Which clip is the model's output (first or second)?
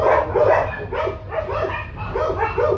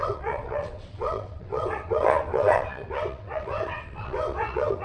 second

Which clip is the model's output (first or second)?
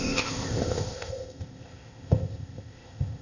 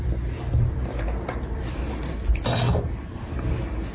first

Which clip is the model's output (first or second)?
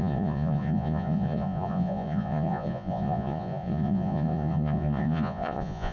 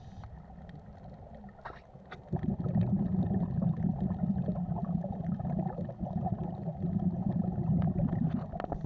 first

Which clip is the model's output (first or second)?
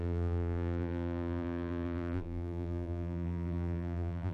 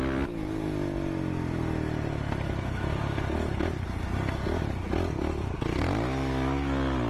first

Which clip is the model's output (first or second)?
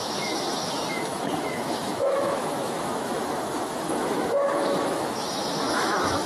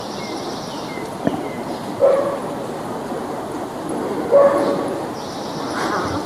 first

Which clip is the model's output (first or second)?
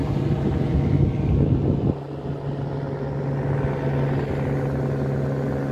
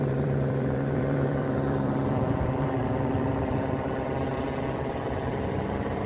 second